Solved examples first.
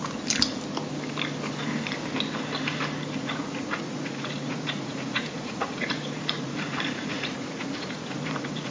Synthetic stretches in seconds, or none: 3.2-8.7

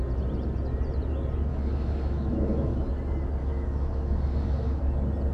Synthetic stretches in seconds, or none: 1.5-2.9; 3.4-4.8